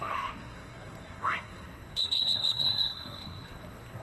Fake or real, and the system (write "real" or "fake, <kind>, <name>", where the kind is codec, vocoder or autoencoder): fake, codec, SNAC